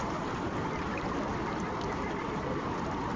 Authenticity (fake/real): real